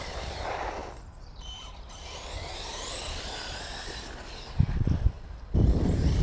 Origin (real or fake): fake